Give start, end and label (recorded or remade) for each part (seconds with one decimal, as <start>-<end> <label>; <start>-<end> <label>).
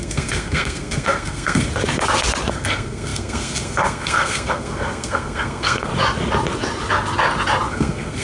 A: 0.0-1.7 remade; 1.7-2.5 recorded; 2.5-5.9 remade; 5.9-7.7 recorded; 7.7-8.2 remade